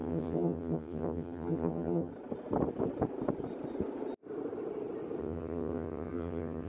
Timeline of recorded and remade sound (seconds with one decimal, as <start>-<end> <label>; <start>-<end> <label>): 0.0-2.1 remade; 2.1-5.2 recorded; 5.2-6.7 remade